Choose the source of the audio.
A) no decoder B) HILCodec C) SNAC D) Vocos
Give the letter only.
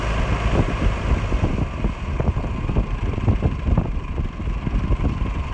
A